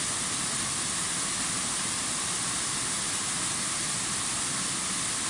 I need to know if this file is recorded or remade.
recorded